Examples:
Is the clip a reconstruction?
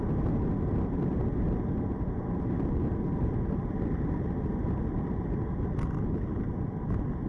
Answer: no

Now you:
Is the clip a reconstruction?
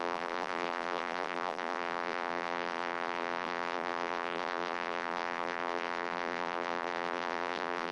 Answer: yes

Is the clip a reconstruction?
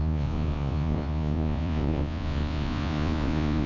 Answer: yes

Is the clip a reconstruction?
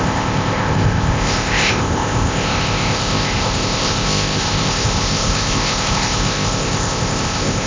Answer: yes